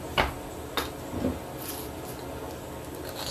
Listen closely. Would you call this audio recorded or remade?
recorded